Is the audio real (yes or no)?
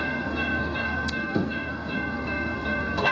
no